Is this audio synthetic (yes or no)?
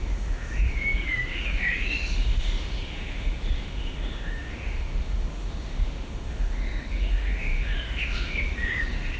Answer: yes